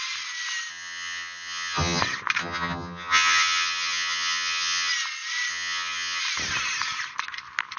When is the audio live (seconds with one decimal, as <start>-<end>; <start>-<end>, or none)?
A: 0.0-0.7; 2.0-2.4; 4.9-5.5; 6.2-7.8